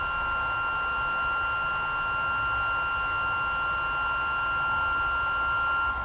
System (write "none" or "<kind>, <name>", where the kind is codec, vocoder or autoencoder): none